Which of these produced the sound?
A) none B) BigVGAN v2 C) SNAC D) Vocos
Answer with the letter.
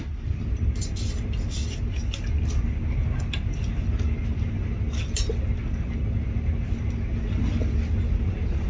A